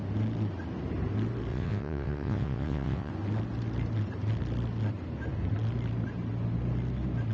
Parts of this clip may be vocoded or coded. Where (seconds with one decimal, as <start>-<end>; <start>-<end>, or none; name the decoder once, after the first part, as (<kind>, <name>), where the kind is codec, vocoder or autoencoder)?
1.5-3.1 (vocoder, WaveNeXt)